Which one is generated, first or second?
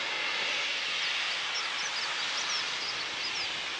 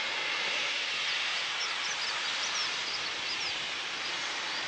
second